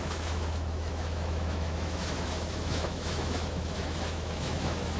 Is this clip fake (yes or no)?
yes